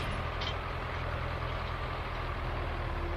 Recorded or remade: recorded